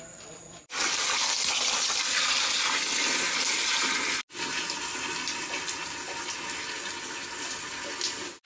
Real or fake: real